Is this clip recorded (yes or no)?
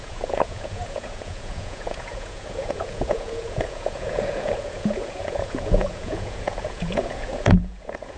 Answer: no